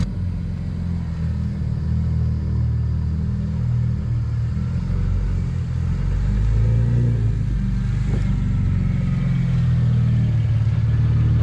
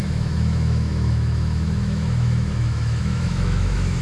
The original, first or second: first